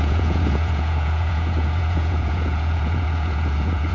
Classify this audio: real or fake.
fake